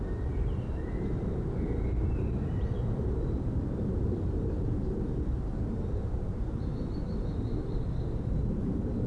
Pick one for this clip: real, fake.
fake